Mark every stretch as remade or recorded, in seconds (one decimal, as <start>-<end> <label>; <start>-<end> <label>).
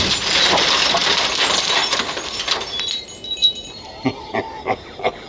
0.0-5.3 recorded